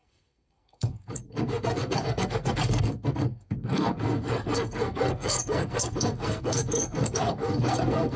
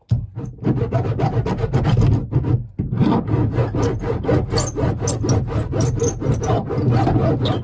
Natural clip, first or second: second